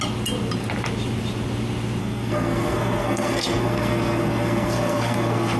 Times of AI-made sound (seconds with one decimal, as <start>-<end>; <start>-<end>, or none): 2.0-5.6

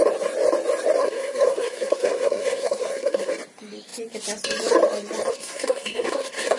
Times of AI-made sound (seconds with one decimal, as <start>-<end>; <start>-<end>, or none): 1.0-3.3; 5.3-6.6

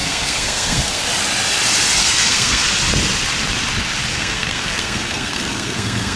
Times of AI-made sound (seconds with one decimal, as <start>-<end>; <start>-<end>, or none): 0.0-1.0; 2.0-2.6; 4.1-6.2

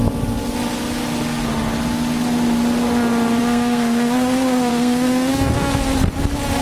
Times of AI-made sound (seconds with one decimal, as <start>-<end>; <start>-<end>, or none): 3.4-5.7

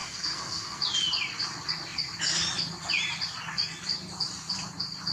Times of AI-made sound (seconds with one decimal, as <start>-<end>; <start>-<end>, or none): 0.0-0.8

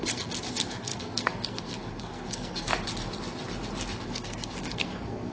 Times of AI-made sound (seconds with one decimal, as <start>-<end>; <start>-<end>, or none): 0.0-2.7; 4.0-5.3